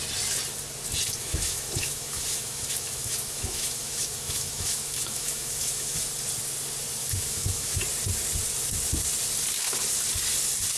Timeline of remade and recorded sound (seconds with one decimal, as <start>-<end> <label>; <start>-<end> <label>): 0.0-1.2 recorded; 1.2-6.1 remade; 6.1-7.0 recorded; 7.0-7.8 remade; 7.8-10.8 recorded